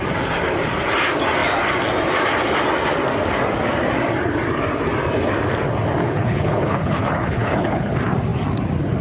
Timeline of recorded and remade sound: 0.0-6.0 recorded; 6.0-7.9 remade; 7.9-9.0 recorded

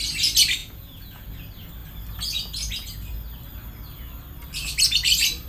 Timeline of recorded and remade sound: 0.0-0.6 recorded; 0.6-1.3 remade; 1.3-5.5 recorded

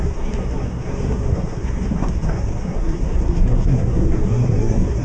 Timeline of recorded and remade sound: 0.0-5.0 remade

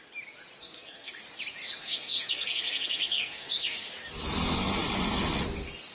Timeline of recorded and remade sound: 0.0-0.6 recorded; 0.6-1.2 remade; 1.2-1.8 recorded; 1.8-3.9 remade; 3.9-5.9 recorded